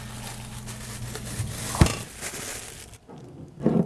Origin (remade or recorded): recorded